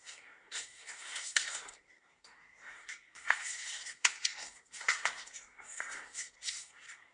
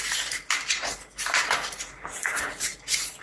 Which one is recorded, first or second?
second